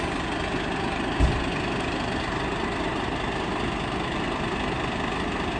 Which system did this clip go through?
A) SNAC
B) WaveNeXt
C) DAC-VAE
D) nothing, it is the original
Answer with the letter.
D